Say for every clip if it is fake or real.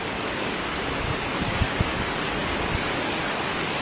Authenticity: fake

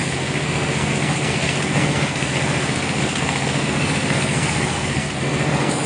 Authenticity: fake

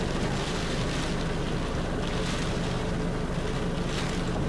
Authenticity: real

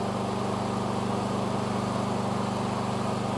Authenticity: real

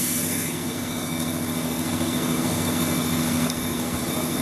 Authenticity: fake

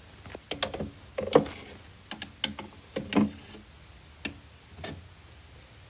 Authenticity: real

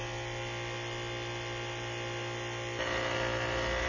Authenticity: real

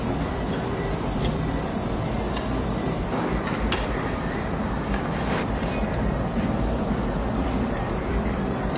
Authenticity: fake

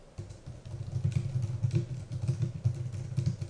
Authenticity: real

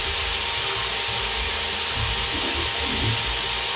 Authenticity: real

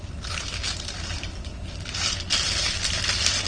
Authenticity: real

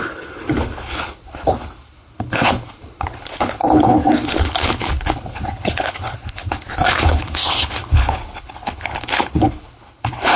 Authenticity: fake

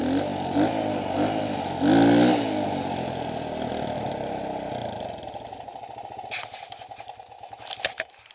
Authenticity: real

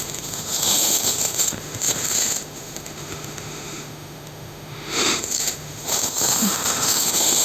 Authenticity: fake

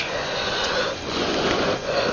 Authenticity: fake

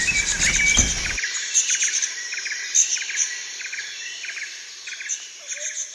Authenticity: real